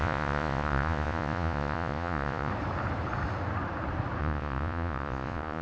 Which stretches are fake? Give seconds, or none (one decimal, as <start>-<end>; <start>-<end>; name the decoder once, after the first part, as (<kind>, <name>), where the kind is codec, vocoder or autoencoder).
0.0-2.5 (vocoder, Vocos); 4.2-5.6